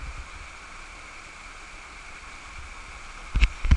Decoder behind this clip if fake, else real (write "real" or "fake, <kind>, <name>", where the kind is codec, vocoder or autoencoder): real